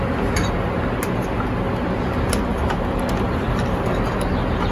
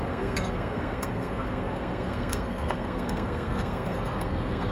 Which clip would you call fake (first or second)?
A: second